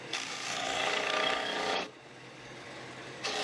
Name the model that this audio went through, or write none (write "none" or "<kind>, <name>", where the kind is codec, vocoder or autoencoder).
codec, DAC